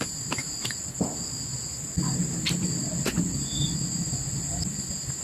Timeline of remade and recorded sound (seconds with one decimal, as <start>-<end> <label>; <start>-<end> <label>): 0.0-5.2 recorded